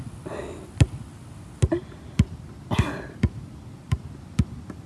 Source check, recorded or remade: recorded